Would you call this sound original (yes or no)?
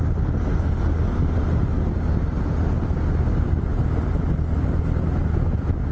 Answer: yes